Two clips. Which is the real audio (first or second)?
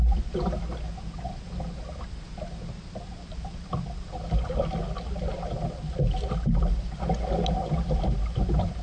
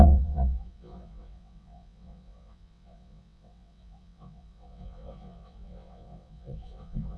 first